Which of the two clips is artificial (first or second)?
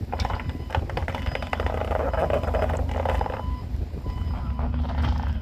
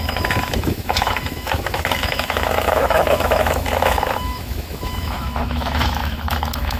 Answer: second